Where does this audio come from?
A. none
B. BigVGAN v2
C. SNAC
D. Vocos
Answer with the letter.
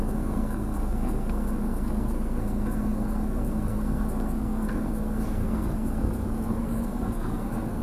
C